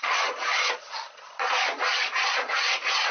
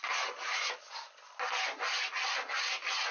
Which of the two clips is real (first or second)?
second